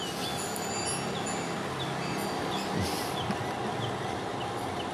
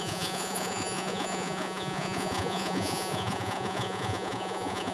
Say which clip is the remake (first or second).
second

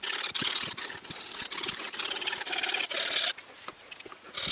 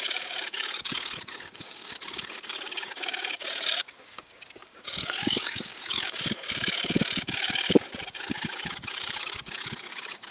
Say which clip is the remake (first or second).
second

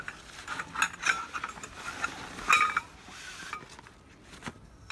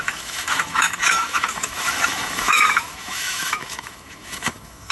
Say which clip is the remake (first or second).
second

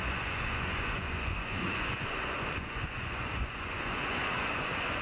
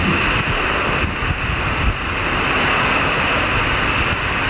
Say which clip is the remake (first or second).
first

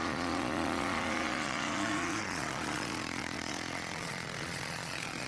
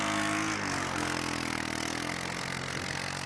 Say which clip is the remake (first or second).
first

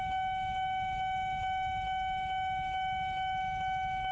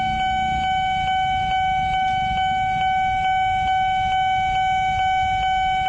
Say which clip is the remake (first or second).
first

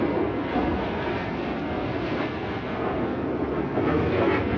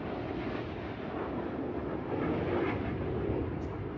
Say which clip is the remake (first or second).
first